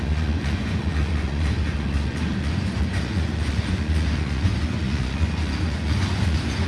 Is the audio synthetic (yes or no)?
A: yes